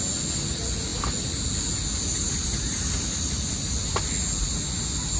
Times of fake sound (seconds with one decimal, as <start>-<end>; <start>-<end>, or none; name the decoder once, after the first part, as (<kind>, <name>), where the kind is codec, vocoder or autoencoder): none

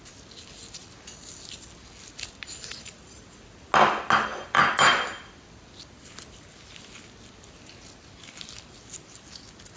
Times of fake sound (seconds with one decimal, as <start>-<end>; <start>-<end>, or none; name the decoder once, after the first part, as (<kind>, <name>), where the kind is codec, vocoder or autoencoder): none

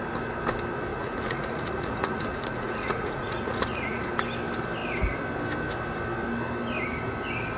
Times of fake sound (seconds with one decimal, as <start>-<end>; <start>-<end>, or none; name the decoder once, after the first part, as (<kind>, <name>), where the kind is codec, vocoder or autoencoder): 0.9-4.1 (vocoder, Vocos)

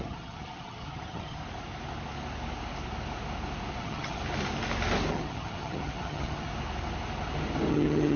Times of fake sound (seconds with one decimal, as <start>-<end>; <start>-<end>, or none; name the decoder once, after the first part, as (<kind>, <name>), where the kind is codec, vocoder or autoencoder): 0.0-1.4 (vocoder, HiFi-GAN); 3.8-4.2; 5.1-6.5; 7.7-8.2

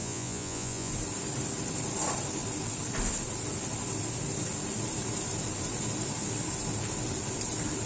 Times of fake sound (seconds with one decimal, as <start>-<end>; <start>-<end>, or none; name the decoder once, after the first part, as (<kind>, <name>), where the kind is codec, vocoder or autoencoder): 0.0-0.9 (vocoder, Vocos)